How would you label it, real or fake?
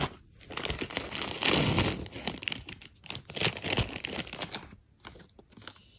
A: real